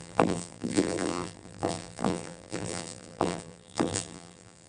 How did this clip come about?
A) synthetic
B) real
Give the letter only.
A